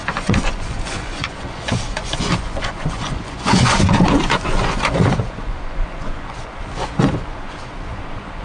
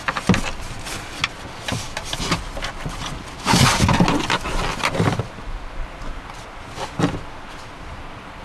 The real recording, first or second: second